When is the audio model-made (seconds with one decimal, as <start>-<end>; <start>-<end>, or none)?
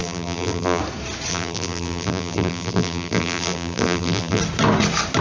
0.0-0.8; 1.3-4.4